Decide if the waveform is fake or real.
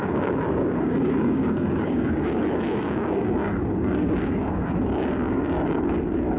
fake